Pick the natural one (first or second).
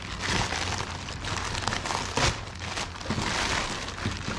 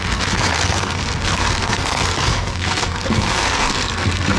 first